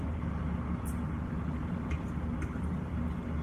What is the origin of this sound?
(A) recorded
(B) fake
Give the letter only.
A